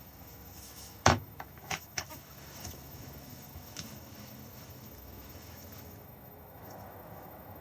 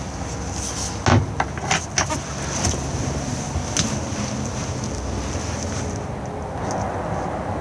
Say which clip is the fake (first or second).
first